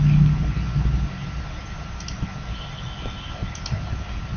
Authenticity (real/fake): real